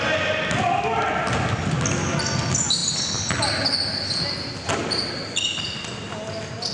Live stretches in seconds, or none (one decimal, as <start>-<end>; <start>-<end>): 0.0-6.7